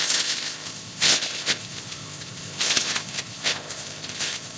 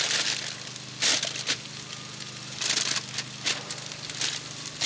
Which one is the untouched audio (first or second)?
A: second